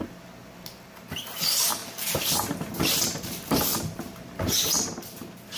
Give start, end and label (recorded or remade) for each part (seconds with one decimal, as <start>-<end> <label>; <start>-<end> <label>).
0.0-3.7 recorded; 3.7-4.2 remade; 4.2-5.6 recorded